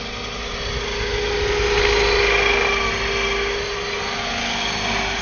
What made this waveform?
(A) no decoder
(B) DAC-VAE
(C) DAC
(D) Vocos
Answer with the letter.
A